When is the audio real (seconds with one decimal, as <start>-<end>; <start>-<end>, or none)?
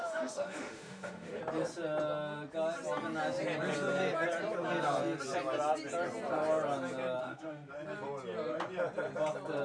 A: 1.4-7.2; 7.7-9.6